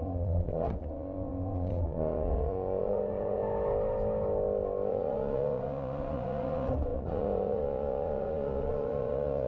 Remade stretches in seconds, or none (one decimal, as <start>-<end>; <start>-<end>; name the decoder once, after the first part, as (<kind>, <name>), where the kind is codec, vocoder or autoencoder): 0.0-3.4 (vocoder, Vocos); 4.9-9.5